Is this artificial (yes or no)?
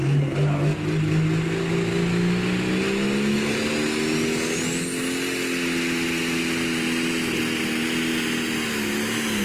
no